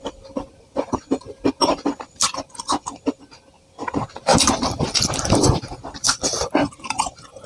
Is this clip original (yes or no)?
no